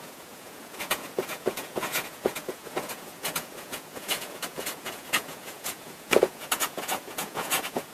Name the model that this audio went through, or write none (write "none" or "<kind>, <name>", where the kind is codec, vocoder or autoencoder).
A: vocoder, Vocos